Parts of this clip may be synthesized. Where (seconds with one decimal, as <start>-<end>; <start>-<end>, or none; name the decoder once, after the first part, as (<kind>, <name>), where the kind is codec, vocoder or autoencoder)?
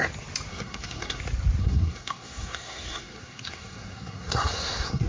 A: 0.5-1.2 (codec, SNAC); 1.6-5.1